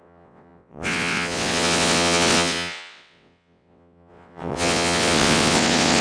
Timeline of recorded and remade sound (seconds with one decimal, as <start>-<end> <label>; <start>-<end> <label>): 0.0-6.0 remade